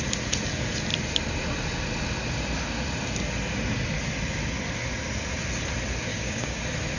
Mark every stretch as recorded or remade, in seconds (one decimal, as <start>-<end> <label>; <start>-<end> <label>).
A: 0.0-6.1 recorded; 6.1-6.6 remade; 6.6-7.0 recorded